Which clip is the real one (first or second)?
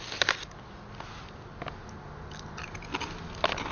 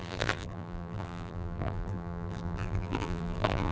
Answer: first